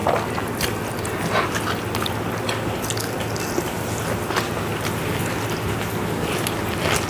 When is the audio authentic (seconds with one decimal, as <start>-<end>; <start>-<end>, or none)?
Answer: 0.0-7.1